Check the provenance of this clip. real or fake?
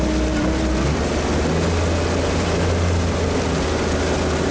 real